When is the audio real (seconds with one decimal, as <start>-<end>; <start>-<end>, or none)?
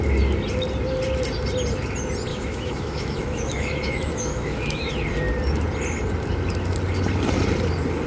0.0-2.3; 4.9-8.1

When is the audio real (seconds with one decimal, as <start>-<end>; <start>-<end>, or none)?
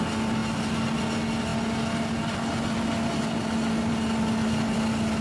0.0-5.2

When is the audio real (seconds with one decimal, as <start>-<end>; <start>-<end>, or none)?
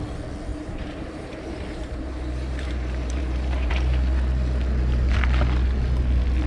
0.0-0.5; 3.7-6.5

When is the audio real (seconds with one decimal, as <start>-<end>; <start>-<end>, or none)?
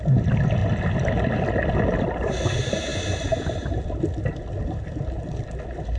0.0-6.0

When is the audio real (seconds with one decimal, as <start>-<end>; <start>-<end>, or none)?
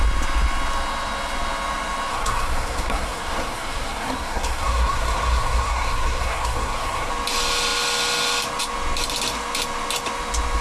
0.0-2.1; 7.1-10.6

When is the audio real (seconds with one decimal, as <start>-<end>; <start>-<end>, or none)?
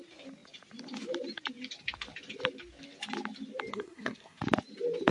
0.0-3.7; 4.4-5.1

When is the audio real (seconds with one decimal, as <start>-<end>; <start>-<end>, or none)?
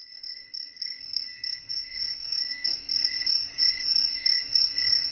3.1-3.9